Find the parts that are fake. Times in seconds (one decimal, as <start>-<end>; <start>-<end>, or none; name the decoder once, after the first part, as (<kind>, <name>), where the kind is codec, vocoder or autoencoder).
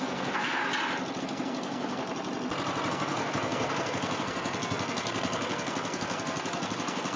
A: 0.0-0.6 (codec, SNAC); 1.2-2.0; 2.9-7.2